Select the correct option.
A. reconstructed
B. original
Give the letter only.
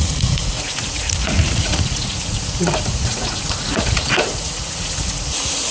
A